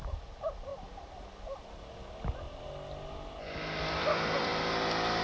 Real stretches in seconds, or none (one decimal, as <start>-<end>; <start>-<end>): 0.7-3.8; 4.5-5.2